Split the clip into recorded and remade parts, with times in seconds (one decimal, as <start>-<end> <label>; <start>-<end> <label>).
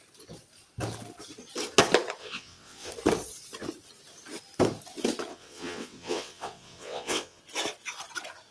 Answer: 0.0-2.2 recorded; 2.2-2.9 remade; 2.9-5.3 recorded; 5.3-7.4 remade; 7.4-8.5 recorded